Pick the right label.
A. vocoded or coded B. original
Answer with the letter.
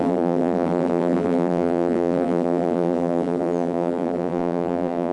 A